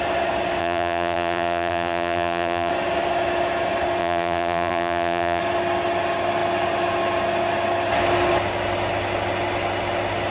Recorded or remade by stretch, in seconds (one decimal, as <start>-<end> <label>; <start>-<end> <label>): 0.0-0.6 recorded; 0.6-2.7 remade; 2.7-4.0 recorded; 4.0-5.4 remade; 5.4-10.3 recorded